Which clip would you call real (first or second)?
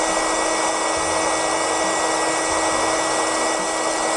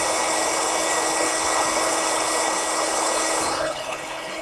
first